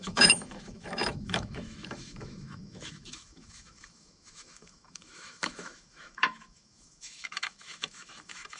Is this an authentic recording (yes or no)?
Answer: no